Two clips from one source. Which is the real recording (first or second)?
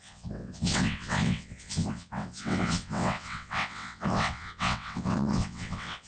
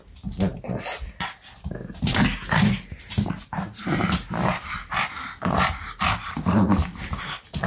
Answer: second